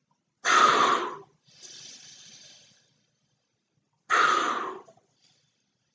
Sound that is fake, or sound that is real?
real